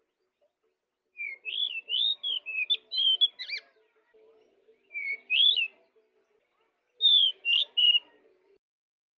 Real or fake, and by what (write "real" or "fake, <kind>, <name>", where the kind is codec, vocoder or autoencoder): real